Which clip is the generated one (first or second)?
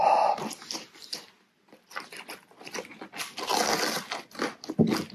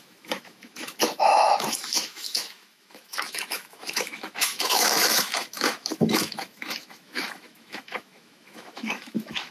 second